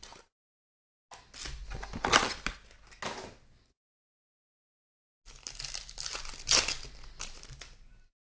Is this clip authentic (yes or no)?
yes